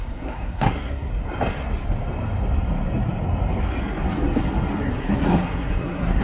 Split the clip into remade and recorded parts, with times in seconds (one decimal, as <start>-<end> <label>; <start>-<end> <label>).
0.0-1.1 remade; 1.1-4.8 recorded; 4.8-6.2 remade